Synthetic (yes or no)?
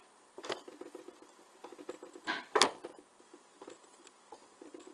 no